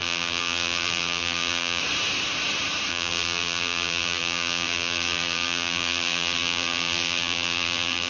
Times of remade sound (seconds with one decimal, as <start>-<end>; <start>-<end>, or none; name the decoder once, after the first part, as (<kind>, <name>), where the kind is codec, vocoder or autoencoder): 0.0-1.8 (vocoder, BigVGAN v2); 2.9-8.1